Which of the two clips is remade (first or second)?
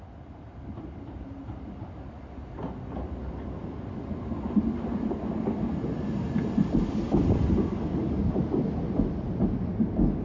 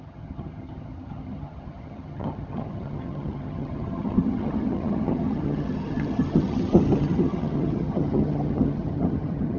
second